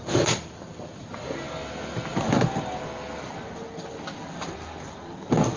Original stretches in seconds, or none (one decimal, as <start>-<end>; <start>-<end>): 0.0-5.6